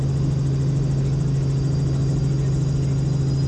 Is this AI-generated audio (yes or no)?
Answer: no